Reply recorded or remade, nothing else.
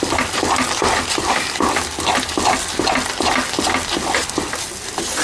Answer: recorded